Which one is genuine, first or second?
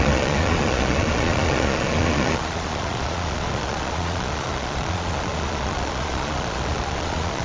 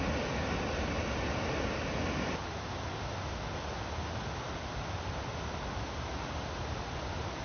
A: second